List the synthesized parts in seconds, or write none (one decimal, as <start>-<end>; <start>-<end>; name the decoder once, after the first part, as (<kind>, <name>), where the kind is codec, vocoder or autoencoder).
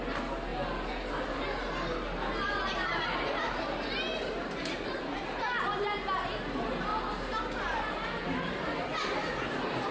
none